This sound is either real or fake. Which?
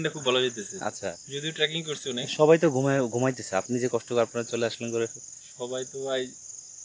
real